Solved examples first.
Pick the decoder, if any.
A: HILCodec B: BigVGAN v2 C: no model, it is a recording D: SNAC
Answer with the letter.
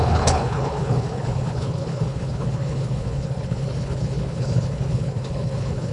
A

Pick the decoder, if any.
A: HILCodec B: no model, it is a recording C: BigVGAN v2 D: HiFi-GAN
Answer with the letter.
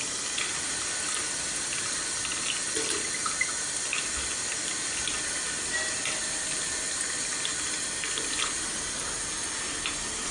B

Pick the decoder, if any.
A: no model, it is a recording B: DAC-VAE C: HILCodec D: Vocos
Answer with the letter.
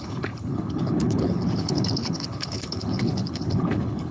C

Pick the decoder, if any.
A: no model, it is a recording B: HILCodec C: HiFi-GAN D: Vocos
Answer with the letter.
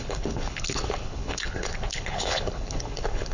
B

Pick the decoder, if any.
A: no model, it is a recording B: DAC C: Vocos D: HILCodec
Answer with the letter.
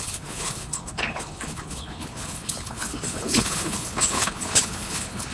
D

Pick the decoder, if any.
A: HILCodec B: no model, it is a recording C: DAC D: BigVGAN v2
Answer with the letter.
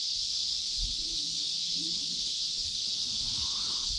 A